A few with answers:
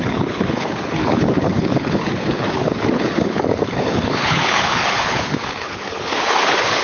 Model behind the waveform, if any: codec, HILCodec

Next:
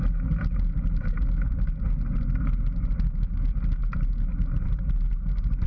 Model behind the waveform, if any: none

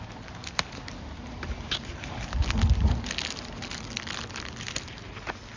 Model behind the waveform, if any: none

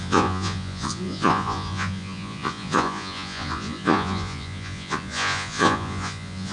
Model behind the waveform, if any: vocoder, Vocos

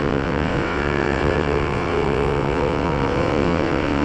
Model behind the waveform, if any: vocoder, WaveNeXt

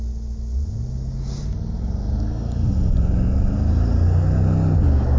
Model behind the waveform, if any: none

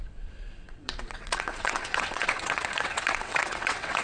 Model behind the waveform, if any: vocoder, WaveNeXt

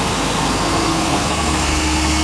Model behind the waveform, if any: codec, SNAC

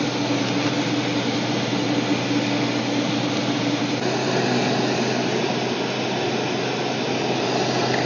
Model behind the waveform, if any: none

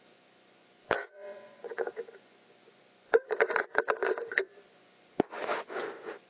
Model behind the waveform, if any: vocoder, Vocos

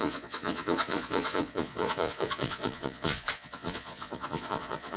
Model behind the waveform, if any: vocoder, Vocos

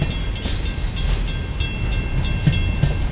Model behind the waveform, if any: none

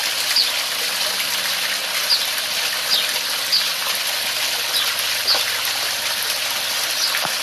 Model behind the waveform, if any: none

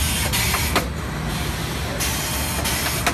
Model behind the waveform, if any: none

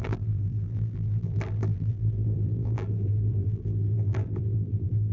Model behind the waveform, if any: vocoder, BigVGAN v2